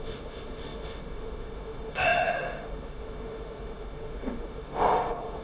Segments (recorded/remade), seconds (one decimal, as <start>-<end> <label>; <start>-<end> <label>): 0.0-5.4 remade